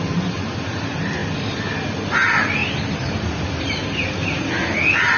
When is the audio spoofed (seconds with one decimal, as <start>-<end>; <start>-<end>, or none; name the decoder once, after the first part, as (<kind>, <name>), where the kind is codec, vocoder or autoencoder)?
none